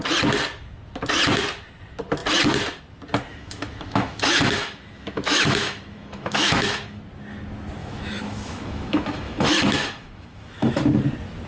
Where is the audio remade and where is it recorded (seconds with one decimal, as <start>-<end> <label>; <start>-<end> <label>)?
0.0-3.3 recorded; 3.3-7.0 remade; 7.0-7.8 recorded; 7.8-10.8 remade; 10.8-11.5 recorded